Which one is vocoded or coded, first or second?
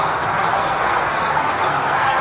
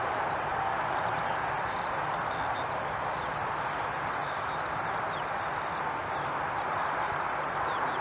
first